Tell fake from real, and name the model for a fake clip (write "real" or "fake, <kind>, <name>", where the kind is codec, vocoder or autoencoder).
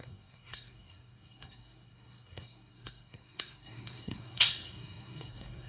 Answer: fake, codec, SNAC